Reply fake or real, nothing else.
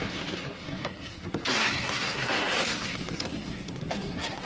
fake